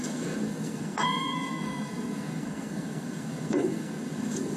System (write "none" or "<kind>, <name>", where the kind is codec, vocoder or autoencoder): codec, SNAC